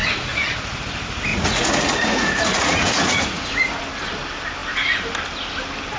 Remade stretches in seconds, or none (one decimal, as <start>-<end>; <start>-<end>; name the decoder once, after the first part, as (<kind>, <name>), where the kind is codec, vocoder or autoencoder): 0.0-0.8 (vocoder, Vocos); 1.3-3.8